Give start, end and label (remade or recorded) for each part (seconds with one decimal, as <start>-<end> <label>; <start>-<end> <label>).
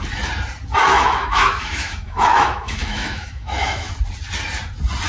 0.0-0.9 recorded; 0.9-3.9 remade; 3.9-5.1 recorded